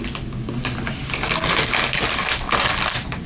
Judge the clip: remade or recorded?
recorded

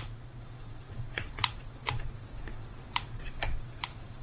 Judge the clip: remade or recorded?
remade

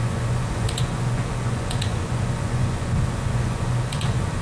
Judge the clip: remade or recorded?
remade